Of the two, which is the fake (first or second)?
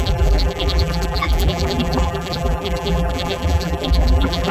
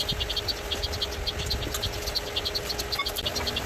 first